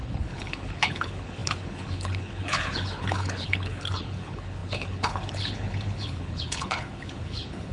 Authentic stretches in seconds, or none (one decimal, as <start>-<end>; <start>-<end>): none